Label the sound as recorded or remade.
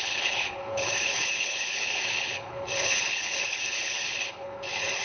remade